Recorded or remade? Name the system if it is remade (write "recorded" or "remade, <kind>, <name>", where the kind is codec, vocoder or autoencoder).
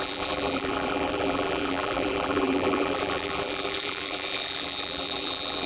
remade, vocoder, BigVGAN v2